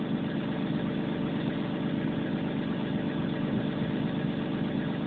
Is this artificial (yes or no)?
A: no